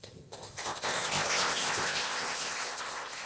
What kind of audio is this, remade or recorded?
remade